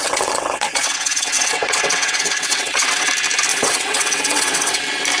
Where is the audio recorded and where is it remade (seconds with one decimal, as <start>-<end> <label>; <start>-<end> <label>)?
0.0-3.1 remade; 3.1-3.5 recorded; 3.5-4.8 remade; 4.8-5.2 recorded